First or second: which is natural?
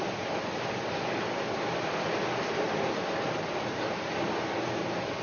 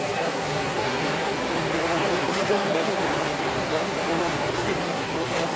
first